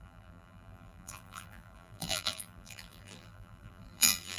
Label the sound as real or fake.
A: fake